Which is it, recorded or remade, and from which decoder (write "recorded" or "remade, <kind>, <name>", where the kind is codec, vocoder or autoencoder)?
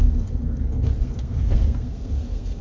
remade, codec, SNAC